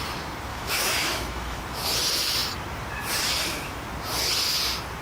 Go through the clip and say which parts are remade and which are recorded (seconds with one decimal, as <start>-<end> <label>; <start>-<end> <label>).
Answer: 0.0-0.5 recorded; 0.5-1.6 remade; 1.6-5.0 recorded